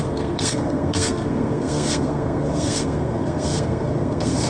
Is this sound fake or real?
fake